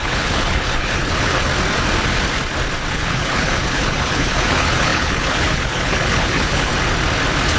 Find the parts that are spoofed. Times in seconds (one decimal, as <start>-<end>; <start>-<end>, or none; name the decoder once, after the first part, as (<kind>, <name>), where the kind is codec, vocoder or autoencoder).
0.0-1.5 (codec, HILCodec); 2.9-6.7